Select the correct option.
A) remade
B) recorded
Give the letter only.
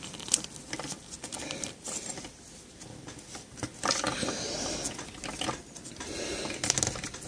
B